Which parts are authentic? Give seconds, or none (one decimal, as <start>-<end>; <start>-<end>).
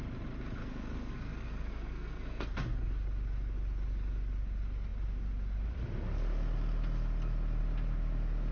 0.0-0.6; 2.9-8.5